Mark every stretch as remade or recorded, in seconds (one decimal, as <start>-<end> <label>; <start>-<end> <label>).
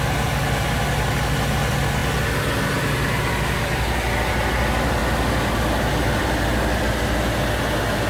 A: 0.0-8.1 recorded